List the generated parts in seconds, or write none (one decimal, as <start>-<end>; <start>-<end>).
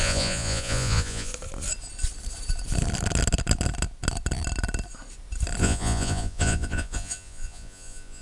0.0-1.3; 5.6-8.2